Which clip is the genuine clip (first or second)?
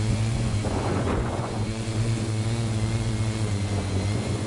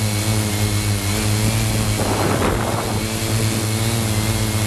second